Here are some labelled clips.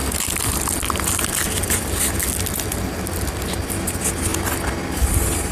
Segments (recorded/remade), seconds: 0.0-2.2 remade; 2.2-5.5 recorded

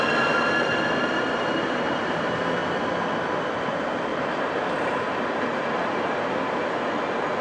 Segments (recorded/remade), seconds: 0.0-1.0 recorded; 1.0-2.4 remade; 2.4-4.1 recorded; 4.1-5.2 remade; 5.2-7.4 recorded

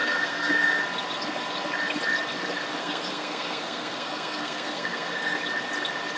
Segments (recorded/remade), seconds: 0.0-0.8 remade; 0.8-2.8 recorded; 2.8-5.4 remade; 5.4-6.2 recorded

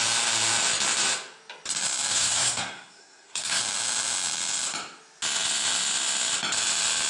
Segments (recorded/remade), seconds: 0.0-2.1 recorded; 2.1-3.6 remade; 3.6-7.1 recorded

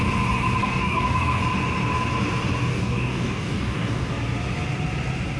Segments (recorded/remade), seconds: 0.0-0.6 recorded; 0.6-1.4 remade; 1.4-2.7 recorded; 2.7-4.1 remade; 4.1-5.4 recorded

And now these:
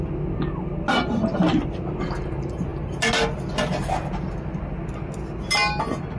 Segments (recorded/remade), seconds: 0.0-6.2 recorded